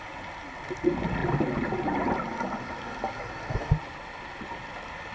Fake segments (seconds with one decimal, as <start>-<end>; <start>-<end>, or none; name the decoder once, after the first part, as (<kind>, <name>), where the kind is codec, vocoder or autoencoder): none